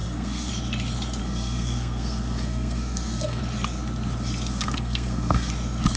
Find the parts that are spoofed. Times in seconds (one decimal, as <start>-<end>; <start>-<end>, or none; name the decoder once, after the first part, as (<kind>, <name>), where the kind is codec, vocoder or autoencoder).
0.0-0.5 (codec, SNAC); 1.2-3.4; 4.5-5.5